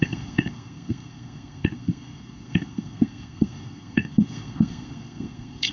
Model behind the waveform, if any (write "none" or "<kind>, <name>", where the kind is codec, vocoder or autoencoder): codec, SNAC